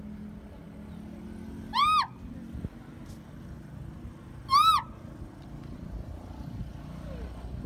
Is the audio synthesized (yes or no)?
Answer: no